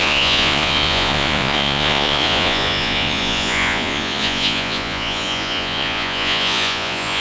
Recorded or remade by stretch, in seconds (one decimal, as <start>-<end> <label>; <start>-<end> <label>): 0.0-7.2 remade